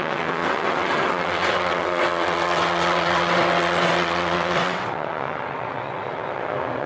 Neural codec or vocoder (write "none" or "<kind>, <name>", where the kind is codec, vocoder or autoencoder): vocoder, WaveNeXt